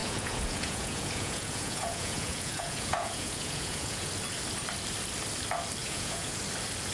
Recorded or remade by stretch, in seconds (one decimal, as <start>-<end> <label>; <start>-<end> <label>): 0.0-4.1 remade; 4.1-5.8 recorded; 5.8-6.4 remade; 6.4-6.9 recorded